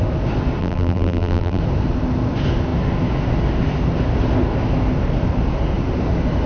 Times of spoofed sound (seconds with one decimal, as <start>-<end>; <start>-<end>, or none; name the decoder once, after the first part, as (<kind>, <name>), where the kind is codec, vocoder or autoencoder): 0.6-1.6 (vocoder, BigVGAN v2)